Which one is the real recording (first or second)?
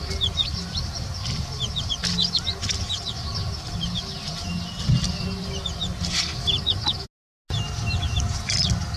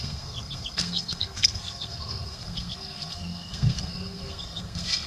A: first